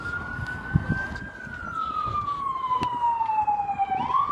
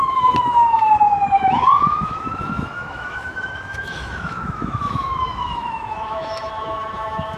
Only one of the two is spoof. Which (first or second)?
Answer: second